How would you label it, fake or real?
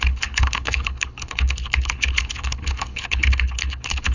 fake